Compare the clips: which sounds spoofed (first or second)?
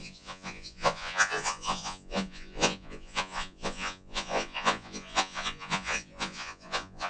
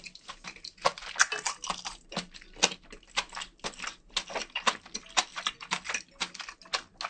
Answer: first